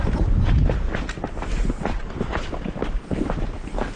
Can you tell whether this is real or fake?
real